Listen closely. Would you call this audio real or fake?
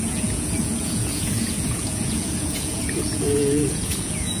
fake